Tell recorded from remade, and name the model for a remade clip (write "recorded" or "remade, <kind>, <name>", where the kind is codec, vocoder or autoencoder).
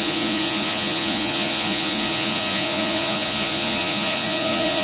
remade, vocoder, Vocos